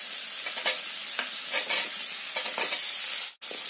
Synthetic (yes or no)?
no